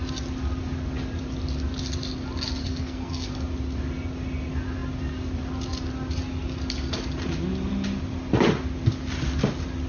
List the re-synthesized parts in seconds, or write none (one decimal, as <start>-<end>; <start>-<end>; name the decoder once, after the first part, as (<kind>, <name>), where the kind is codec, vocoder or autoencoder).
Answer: 2.6-3.3 (codec, SNAC)